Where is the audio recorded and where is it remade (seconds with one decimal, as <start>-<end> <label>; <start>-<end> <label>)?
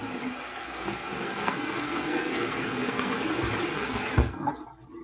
0.0-0.5 recorded; 0.5-3.2 remade; 3.2-3.7 recorded; 3.7-4.5 remade; 4.5-5.0 recorded